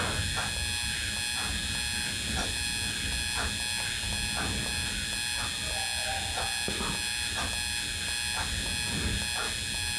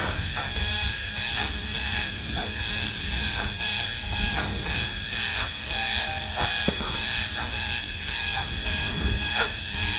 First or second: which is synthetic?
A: second